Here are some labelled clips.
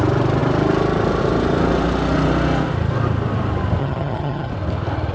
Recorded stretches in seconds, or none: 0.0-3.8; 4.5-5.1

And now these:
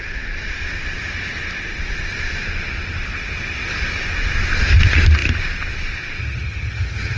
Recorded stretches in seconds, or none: 0.0-6.2

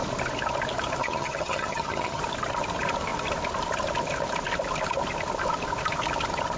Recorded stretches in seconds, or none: 0.0-1.0; 2.2-6.6

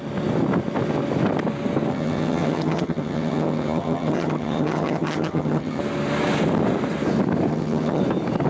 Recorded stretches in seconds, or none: 0.0-1.9; 5.8-7.5; 8.0-8.5

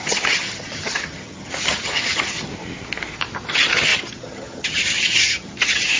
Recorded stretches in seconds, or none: 2.5-3.5